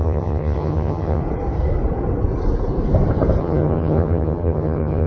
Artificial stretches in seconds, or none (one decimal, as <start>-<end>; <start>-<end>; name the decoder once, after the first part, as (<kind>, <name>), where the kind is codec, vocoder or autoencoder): 0.0-1.2 (vocoder, HiFi-GAN); 3.4-5.1